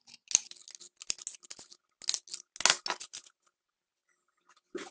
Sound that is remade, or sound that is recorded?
recorded